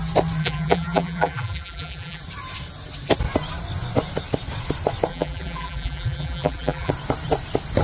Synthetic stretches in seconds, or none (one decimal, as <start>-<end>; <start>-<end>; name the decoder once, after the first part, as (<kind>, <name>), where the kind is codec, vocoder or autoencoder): 0.4-2.2 (vocoder, BigVGAN v2); 5.1-6.9